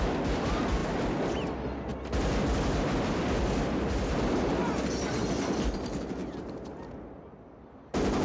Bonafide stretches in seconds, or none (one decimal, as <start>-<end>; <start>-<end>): 0.0-8.2